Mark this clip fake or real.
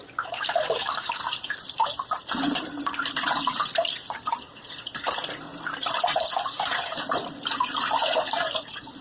fake